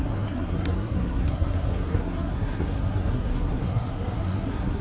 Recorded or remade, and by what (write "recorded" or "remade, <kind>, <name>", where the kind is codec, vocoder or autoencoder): remade, codec, SNAC